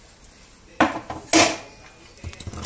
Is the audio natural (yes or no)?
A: yes